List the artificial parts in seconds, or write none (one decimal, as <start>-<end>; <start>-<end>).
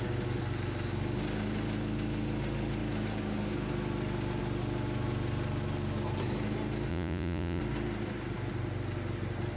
6.9-7.6